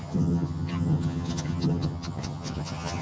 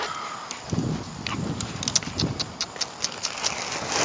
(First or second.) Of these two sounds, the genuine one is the second